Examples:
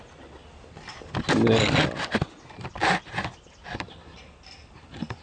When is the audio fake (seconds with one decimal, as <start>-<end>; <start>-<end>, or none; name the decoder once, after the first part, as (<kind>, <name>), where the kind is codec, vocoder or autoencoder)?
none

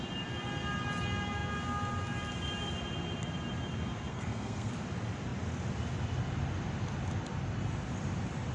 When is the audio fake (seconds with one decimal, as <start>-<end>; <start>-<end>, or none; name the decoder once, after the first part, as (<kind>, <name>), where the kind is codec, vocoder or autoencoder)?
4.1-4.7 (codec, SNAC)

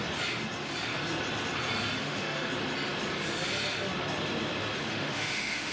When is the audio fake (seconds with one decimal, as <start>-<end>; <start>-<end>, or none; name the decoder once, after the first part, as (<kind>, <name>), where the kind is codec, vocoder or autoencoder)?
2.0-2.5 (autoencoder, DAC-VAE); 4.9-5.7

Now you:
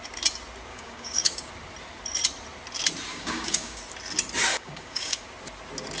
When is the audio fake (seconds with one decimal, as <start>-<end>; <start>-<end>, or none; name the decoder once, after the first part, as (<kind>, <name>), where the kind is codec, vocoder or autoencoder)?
0.7-1.5 (codec, DAC); 3.1-3.8; 4.5-5.2

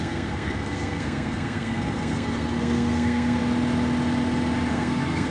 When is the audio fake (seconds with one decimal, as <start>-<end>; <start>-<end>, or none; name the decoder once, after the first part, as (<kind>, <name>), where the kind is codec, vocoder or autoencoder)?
0.0-3.4 (codec, SNAC); 4.7-5.3

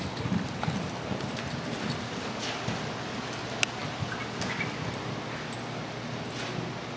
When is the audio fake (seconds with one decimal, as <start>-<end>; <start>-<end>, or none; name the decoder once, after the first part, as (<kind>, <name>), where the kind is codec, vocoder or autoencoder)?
none